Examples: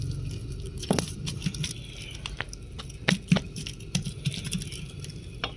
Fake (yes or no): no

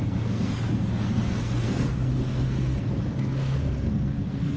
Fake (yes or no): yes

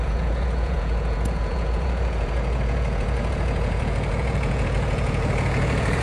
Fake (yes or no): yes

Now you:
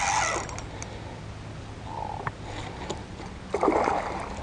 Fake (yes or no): no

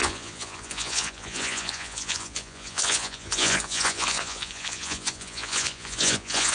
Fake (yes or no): yes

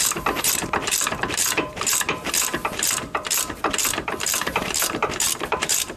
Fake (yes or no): yes